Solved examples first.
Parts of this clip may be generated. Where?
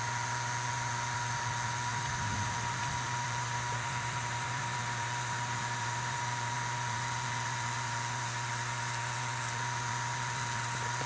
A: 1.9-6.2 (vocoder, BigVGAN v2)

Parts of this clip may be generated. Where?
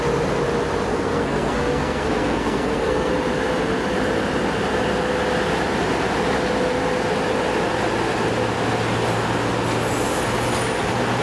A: 0.9-3.1 (codec, SNAC)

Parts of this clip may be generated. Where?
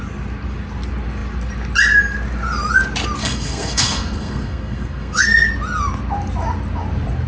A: 3.2-5.5 (codec, SNAC)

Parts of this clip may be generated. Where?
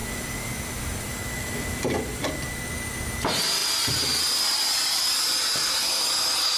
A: none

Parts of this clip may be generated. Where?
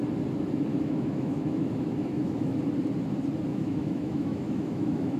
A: 0.7-2.6 (autoencoder, DAC-VAE); 3.5-5.2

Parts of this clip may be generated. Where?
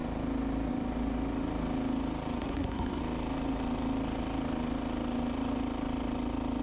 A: 2.4-3.0 (codec, SNAC)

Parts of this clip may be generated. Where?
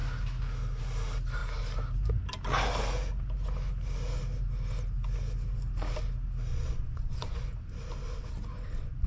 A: 6.5-7.4 (vocoder, Vocos)